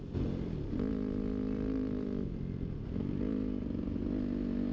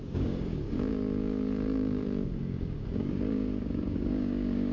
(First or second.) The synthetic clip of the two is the second